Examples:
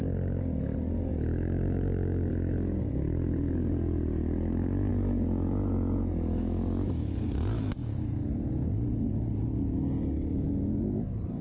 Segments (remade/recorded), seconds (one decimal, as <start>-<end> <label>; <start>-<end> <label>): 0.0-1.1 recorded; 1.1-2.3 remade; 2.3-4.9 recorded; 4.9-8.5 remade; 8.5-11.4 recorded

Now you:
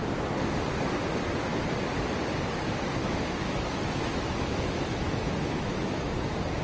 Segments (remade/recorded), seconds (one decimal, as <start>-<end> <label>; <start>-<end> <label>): 0.0-3.0 recorded; 3.0-6.1 remade; 6.1-6.6 recorded

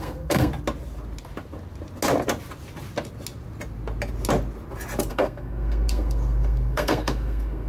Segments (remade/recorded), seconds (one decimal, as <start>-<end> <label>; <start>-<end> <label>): 0.0-0.5 remade; 0.5-5.1 recorded; 5.1-7.7 remade

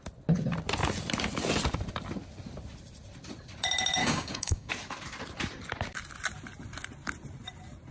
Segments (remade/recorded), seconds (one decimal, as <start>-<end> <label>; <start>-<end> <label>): 0.0-4.0 recorded; 4.0-4.7 remade; 4.7-7.9 recorded

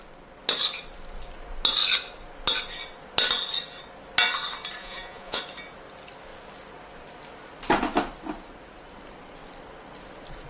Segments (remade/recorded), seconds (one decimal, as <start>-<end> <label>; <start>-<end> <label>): 0.0-4.8 recorded; 4.8-5.4 remade; 5.4-10.5 recorded

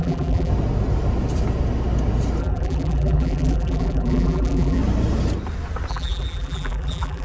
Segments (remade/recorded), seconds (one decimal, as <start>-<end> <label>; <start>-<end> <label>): 0.0-0.5 remade; 0.5-2.4 recorded; 2.4-4.8 remade; 4.8-5.9 recorded; 5.9-7.2 remade